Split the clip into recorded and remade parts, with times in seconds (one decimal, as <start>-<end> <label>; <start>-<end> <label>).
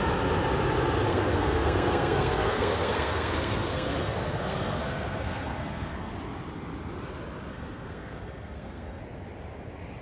0.0-1.1 recorded; 1.1-6.1 remade; 6.1-7.5 recorded; 7.5-9.0 remade; 9.0-10.0 recorded